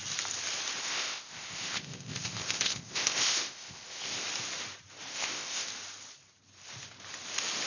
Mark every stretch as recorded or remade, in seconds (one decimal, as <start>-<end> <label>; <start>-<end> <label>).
0.0-0.8 recorded; 0.8-4.3 remade; 4.3-5.1 recorded; 5.1-5.7 remade; 5.7-7.7 recorded